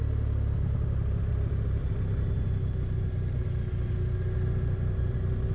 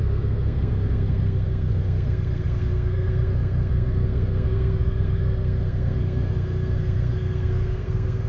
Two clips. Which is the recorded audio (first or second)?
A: first